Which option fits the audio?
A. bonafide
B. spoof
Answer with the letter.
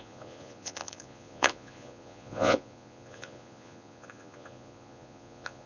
B